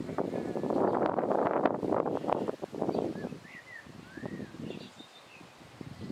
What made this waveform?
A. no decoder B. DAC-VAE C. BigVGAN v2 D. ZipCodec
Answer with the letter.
A